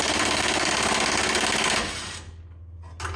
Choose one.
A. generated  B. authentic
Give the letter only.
B